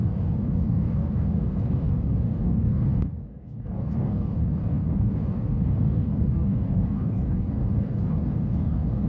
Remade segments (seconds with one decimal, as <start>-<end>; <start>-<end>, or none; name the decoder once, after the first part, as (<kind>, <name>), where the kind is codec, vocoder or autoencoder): 0.0-9.1 (codec, DAC)

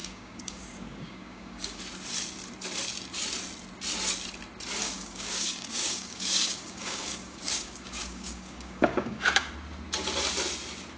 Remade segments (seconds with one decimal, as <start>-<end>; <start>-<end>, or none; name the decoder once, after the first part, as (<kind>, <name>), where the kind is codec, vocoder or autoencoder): 0.0-1.8 (codec, DAC); 4.8-9.5

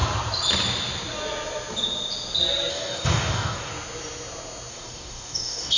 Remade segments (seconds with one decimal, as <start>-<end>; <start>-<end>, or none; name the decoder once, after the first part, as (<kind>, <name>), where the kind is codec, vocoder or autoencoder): 2.7-3.7 (codec, DAC); 4.7-5.8

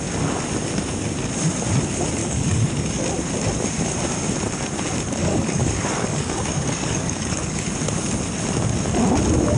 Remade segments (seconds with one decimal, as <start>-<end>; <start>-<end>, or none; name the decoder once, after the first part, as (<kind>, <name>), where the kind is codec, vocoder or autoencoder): 2.2-3.0 (codec, DAC); 5.2-7.7

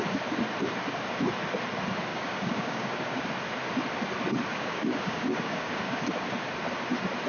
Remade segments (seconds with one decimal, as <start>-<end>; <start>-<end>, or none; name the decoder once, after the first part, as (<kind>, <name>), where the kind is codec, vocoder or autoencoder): 2.1-3.2 (codec, DAC); 4.5-6.0

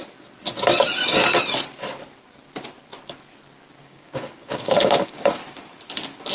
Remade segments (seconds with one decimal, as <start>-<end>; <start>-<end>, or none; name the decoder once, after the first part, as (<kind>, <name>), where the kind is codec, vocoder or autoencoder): 3.8-5.4 (codec, DAC)